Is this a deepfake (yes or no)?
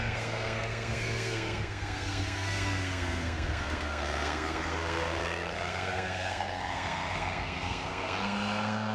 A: yes